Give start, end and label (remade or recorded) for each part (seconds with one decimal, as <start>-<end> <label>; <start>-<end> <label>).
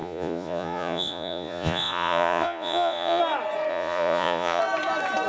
0.0-3.2 remade; 3.2-3.7 recorded; 3.7-4.6 remade; 4.6-5.3 recorded